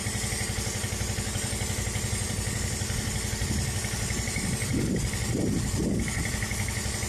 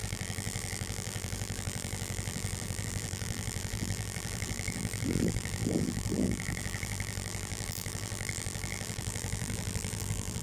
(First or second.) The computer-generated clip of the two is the second